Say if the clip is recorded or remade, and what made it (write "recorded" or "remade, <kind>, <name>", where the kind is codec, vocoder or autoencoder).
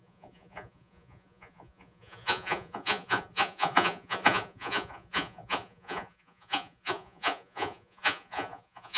remade, vocoder, Vocos